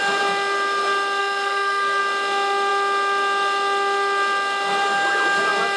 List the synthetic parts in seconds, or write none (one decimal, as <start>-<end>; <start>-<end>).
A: 1.2-2.0